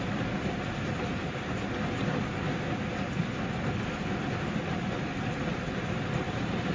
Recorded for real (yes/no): yes